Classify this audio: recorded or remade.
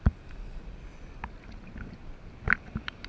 recorded